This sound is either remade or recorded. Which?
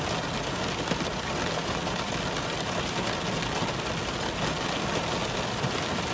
recorded